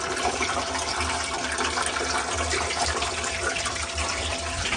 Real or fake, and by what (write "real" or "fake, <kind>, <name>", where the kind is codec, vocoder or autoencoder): fake, vocoder, BigVGAN v2